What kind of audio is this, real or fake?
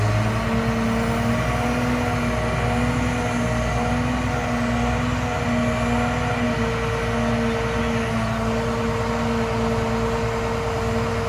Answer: real